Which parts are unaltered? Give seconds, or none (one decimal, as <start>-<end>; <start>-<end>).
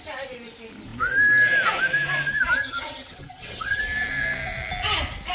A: 0.0-2.6; 3.8-5.3